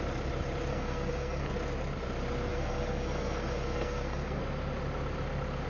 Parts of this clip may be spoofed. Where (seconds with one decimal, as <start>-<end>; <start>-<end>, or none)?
0.7-1.5; 2.5-4.4